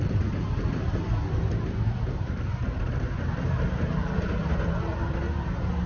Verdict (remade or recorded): recorded